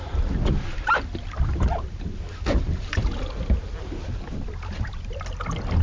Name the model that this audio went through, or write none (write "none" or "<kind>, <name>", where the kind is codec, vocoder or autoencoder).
none